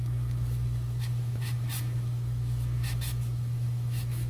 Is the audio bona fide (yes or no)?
no